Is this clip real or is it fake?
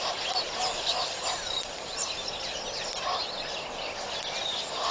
real